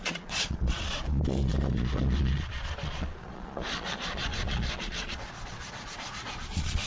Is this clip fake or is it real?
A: fake